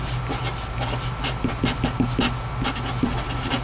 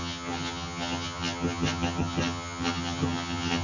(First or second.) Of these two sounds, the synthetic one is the second